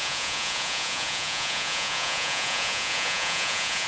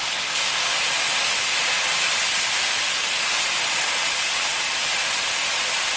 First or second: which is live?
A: second